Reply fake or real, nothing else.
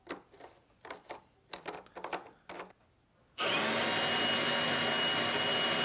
real